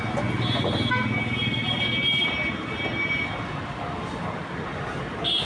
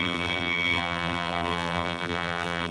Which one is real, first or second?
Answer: first